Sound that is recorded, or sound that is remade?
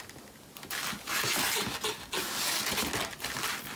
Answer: recorded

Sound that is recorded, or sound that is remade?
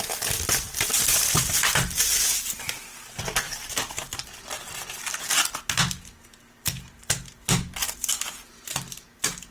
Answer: recorded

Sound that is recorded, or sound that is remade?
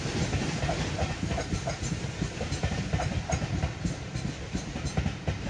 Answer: recorded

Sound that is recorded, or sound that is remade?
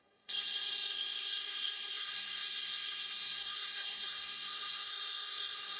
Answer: remade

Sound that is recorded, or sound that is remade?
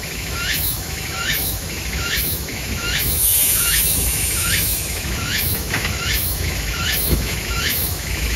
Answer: remade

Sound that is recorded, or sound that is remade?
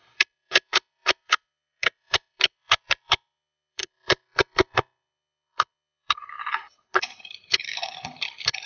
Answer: remade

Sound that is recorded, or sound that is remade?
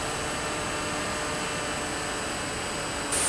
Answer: recorded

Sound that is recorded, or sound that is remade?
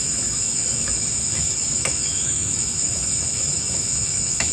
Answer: remade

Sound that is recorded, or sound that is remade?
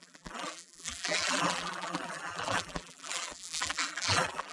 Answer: remade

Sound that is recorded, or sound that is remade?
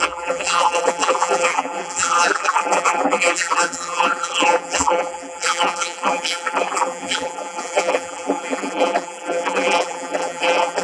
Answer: remade